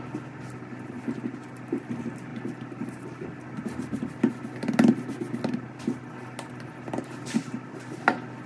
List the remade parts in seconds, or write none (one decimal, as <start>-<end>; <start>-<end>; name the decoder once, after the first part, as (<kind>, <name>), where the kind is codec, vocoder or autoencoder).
none